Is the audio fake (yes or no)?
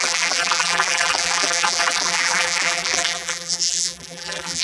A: yes